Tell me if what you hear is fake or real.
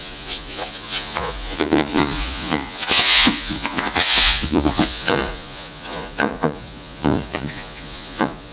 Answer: fake